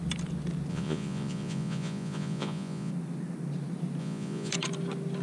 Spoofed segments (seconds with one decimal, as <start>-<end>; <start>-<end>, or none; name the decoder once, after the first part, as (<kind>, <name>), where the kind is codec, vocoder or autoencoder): 0.7-2.9 (vocoder, Vocos); 4.0-4.5